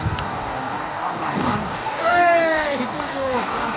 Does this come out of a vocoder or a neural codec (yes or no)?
yes